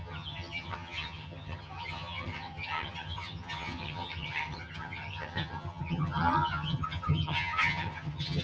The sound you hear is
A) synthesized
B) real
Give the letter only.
A